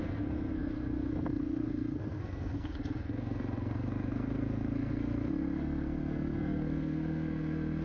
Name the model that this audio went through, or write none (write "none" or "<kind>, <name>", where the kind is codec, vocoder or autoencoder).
codec, SNAC